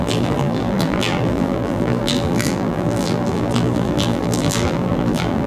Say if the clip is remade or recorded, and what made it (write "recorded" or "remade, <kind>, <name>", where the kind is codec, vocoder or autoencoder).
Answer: remade, vocoder, BigVGAN v2